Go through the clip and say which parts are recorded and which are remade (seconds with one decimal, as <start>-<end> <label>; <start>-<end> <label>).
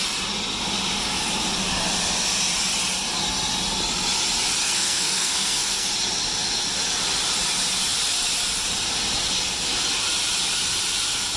0.0-4.6 recorded; 4.6-5.9 remade; 5.9-11.4 recorded